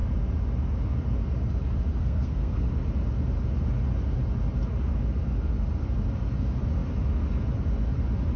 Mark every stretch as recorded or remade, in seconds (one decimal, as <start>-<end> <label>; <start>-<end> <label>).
0.0-2.0 recorded; 2.0-2.7 remade; 2.7-8.4 recorded